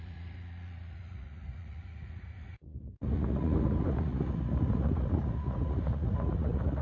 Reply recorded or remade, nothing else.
remade